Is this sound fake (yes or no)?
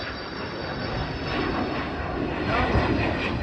no